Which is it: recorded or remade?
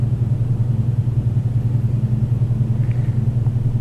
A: recorded